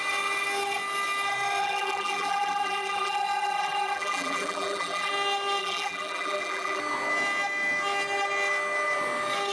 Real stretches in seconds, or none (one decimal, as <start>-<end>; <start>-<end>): 0.0-1.6; 5.1-5.6; 6.8-9.5